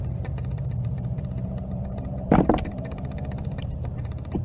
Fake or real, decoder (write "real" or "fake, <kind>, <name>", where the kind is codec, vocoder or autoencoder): fake, vocoder, BigVGAN v2